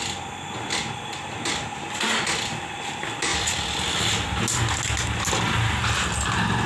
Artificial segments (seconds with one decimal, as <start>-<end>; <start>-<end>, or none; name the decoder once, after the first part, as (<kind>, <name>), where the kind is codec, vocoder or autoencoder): none